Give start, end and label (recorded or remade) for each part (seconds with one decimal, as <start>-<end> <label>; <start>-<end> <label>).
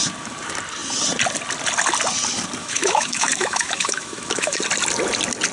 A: 0.0-2.6 recorded; 2.6-4.6 remade; 4.6-5.5 recorded